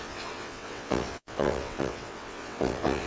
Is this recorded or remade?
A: remade